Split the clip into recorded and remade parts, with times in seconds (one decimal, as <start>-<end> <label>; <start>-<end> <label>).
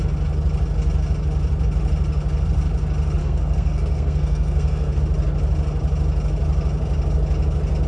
0.0-3.2 recorded; 3.2-5.0 remade; 5.0-7.9 recorded